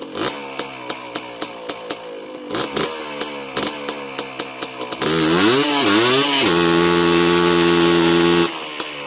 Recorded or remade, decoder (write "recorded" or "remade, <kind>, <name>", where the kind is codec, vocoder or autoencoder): recorded